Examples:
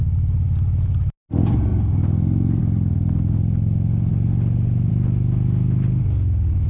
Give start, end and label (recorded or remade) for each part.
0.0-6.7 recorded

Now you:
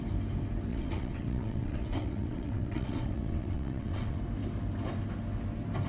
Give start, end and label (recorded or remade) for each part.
0.0-0.7 recorded; 0.7-4.2 remade; 4.2-5.9 recorded

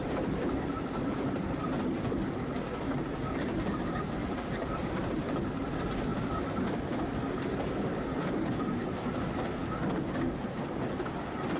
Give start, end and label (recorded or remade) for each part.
0.0-11.6 recorded

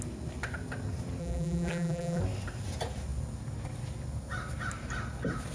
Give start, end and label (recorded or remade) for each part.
0.0-1.2 recorded; 1.2-2.2 remade; 2.2-5.5 recorded

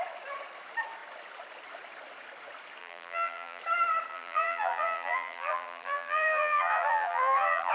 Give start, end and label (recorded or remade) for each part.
0.0-2.8 recorded; 2.8-3.6 remade; 3.6-4.1 recorded; 4.1-7.7 remade

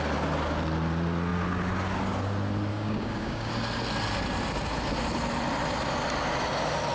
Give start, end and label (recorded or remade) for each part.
0.0-2.7 recorded; 2.7-3.5 remade; 3.5-6.9 recorded

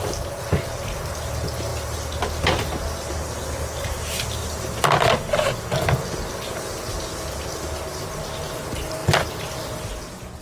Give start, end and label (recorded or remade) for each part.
0.0-10.4 recorded

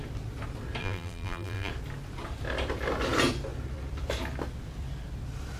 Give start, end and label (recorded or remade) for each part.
0.0-0.8 recorded; 0.8-1.7 remade; 1.7-5.6 recorded